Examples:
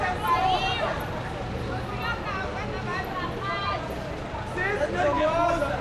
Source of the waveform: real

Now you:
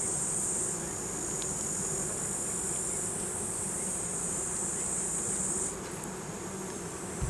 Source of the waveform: real